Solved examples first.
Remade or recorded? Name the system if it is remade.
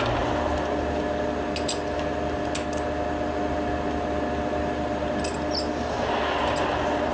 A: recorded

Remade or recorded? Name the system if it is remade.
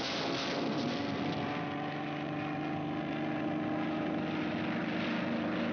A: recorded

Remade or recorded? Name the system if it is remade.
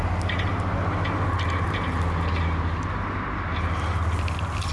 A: recorded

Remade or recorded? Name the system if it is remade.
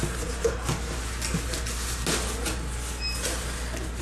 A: recorded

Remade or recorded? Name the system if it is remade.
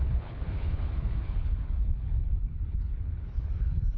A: remade, codec, HILCodec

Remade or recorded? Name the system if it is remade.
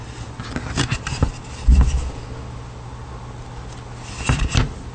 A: recorded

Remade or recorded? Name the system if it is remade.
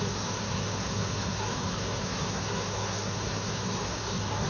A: remade, codec, SNAC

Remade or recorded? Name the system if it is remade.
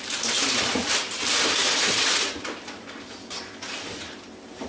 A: remade, vocoder, BigVGAN v2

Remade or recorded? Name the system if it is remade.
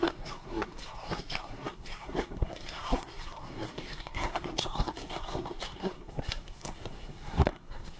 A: remade, codec, SNAC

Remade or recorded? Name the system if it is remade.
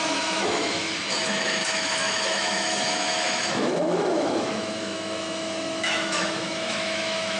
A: remade, autoencoder, DAC-VAE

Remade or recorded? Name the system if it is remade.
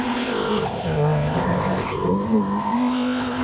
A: remade, codec, ZipCodec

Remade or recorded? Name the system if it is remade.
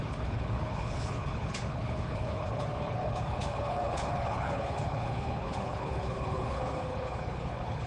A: remade, codec, HILCodec